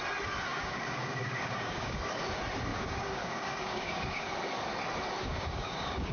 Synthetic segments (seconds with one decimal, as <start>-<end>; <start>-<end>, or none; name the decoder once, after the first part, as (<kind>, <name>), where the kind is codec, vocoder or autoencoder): 0.5-2.0 (codec, DAC); 2.7-4.2; 5.3-6.1